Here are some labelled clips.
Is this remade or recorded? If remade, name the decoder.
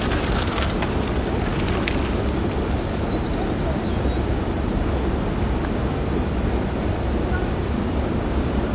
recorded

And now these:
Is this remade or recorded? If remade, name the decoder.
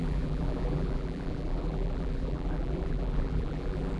remade, vocoder, BigVGAN v2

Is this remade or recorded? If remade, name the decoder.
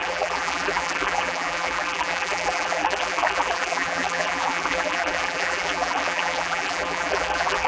remade, vocoder, BigVGAN v2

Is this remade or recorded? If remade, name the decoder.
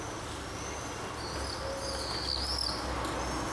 recorded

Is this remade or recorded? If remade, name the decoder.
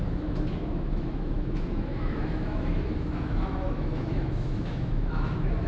remade, autoencoder, DAC-VAE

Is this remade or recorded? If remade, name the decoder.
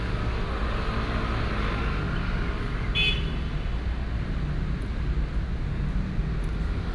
recorded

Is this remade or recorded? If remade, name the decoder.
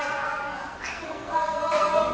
remade, codec, SNAC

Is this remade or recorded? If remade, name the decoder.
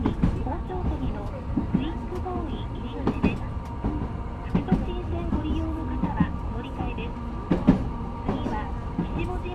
recorded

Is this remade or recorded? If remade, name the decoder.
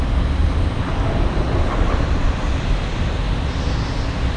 remade, vocoder, BigVGAN v2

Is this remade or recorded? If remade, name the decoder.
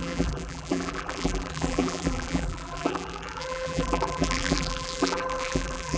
remade, vocoder, BigVGAN v2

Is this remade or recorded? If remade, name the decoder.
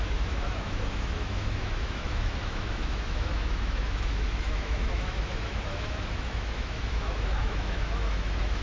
remade, autoencoder, DAC-VAE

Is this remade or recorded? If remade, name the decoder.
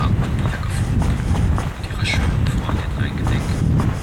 recorded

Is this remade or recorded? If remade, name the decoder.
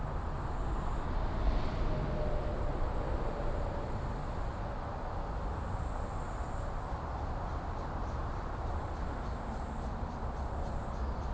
recorded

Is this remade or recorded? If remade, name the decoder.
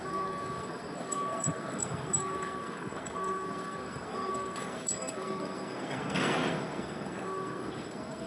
remade, codec, SNAC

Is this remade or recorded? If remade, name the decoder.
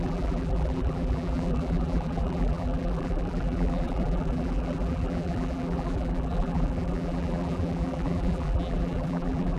remade, vocoder, BigVGAN v2